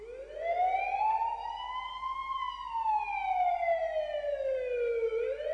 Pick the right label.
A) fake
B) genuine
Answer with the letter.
B